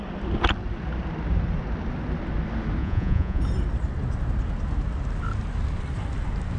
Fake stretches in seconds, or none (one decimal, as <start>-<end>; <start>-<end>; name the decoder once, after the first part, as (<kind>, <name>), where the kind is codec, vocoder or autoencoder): 2.8-3.4 (vocoder, Vocos)

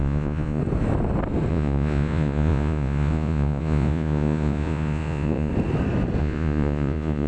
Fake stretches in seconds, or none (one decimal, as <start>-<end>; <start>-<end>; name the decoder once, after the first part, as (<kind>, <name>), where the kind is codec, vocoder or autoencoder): 0.0-0.6 (vocoder, Vocos); 1.5-5.5; 6.2-7.3

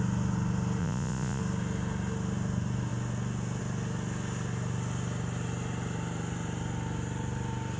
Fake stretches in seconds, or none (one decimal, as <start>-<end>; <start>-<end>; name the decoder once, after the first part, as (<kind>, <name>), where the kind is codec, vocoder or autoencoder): 0.8-1.4 (vocoder, Vocos)

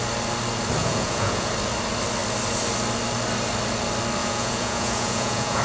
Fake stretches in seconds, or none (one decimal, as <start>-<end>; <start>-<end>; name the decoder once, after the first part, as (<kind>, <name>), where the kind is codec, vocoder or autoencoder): 0.8-1.5 (vocoder, Vocos); 4.2-5.6